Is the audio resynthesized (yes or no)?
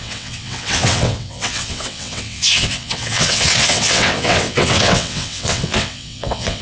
yes